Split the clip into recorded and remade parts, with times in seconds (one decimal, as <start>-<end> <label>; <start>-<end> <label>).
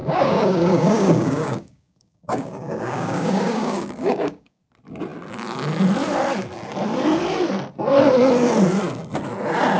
0.0-4.6 remade; 4.6-9.8 recorded